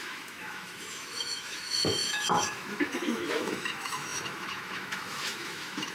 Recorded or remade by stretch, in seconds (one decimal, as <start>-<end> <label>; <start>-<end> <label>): 0.0-5.9 remade